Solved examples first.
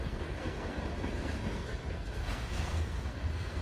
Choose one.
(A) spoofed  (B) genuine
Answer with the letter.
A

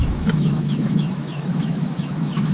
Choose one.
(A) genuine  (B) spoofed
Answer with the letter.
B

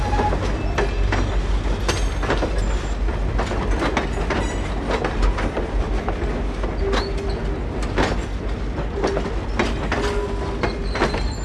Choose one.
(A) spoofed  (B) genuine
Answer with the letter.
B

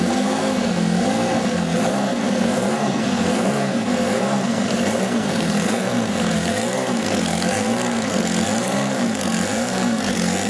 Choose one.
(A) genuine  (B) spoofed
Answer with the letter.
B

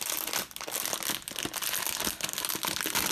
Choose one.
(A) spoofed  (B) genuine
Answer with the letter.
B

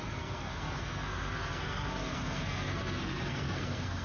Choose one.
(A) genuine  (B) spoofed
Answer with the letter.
B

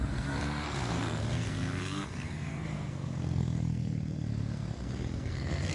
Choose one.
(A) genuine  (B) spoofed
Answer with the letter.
B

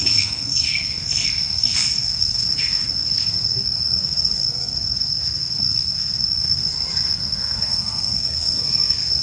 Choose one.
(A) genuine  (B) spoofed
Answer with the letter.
B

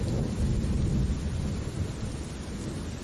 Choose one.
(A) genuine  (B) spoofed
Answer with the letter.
A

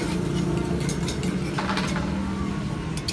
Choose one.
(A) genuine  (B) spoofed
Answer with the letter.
A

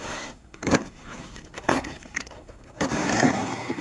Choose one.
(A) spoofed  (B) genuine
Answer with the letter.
A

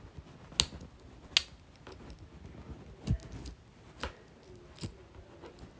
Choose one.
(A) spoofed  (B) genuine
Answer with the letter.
B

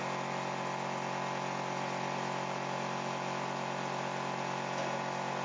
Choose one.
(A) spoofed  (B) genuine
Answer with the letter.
B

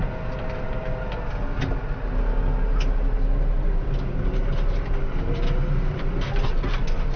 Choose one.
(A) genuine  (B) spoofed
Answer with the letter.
A